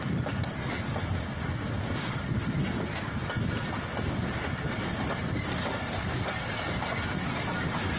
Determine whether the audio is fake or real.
real